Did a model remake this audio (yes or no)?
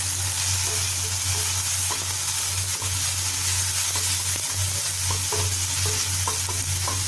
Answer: no